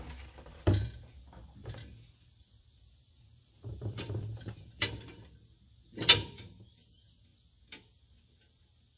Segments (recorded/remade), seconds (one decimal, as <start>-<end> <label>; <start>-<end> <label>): 0.0-1.6 recorded; 1.6-5.3 remade; 5.3-9.0 recorded